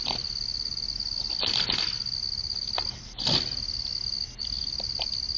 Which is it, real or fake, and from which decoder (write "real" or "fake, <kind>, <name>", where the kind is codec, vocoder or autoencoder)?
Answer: real